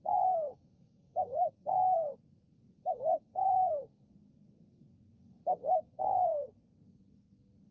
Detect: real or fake fake